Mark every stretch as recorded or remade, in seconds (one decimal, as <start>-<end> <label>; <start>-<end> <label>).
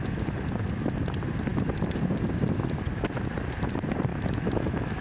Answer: 0.0-4.1 recorded; 4.1-5.0 remade